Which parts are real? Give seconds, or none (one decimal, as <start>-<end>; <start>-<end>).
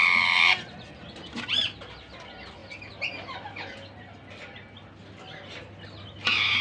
0.0-6.6